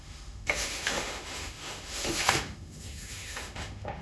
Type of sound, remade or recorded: remade